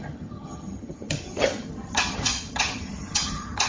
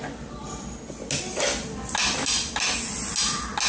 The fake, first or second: first